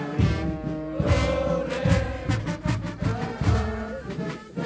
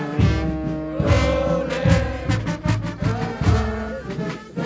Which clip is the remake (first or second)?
first